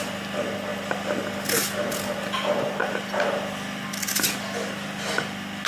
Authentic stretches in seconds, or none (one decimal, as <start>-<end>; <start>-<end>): 0.0-5.7